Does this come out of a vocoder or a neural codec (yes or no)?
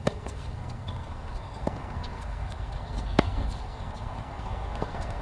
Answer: yes